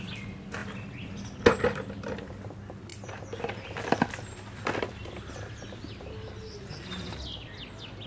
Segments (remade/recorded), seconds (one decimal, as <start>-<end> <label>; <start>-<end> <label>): 0.0-8.1 recorded